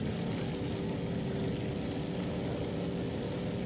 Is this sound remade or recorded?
recorded